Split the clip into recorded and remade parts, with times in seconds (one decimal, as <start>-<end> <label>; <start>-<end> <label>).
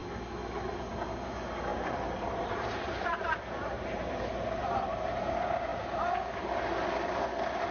0.0-1.7 recorded; 1.7-4.1 remade; 4.1-4.6 recorded; 4.6-5.2 remade; 5.2-7.7 recorded